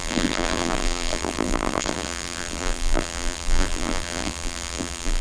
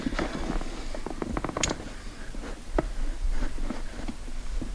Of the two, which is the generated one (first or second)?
first